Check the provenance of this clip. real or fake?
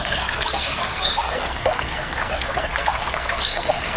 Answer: fake